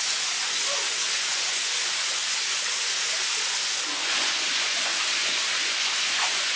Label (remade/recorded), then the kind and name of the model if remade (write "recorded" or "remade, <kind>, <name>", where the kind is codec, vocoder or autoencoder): remade, vocoder, Vocos